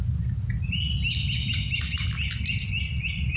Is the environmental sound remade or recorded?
recorded